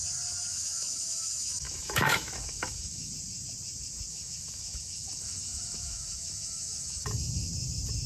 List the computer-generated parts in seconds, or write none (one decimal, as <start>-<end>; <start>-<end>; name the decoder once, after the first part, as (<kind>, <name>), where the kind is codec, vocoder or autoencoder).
0.5-3.1 (autoencoder, DAC-VAE); 4.1-7.5

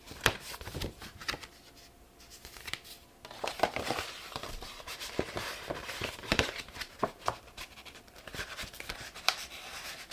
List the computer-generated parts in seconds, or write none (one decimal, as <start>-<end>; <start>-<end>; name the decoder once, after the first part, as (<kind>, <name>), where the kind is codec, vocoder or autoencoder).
0.0-1.2 (vocoder, BigVGAN v2); 3.5-10.1

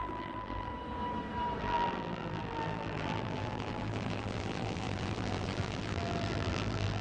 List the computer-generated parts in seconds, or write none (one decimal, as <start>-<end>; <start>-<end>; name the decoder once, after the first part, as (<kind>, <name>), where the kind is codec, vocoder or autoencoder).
0.0-0.7 (vocoder, BigVGAN v2); 1.6-7.0

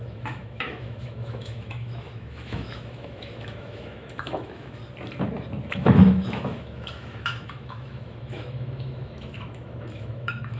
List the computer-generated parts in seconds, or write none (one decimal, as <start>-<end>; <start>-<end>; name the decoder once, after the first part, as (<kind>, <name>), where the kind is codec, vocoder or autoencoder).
0.0-4.8 (autoencoder, DAC-VAE); 5.7-10.6

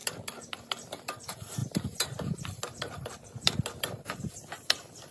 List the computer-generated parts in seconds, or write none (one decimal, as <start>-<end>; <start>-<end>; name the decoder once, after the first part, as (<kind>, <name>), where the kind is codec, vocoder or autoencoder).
1.0-5.1 (vocoder, BigVGAN v2)

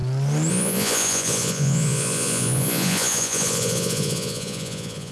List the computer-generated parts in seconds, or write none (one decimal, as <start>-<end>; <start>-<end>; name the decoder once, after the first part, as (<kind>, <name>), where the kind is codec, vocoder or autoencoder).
0.5-5.1 (vocoder, Vocos)

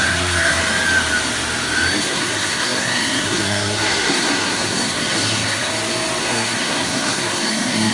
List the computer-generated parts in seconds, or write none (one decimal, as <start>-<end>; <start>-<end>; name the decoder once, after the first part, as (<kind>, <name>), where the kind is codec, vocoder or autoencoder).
0.0-0.6 (codec, SNAC); 2.0-5.7; 6.2-7.9